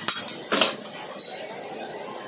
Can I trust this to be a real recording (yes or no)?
yes